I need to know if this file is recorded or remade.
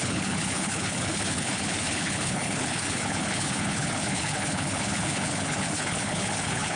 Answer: remade